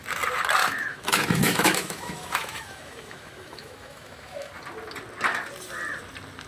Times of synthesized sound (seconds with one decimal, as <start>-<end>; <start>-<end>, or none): 0.6-4.5